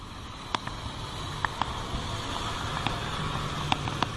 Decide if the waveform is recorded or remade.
recorded